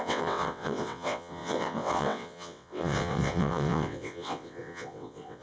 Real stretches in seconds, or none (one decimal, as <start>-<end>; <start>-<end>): none